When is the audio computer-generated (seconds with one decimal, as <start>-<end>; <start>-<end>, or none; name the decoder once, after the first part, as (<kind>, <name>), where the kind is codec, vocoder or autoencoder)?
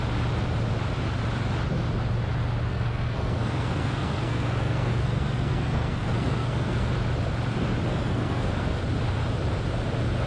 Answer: 2.7-6.9 (codec, SNAC); 7.9-8.8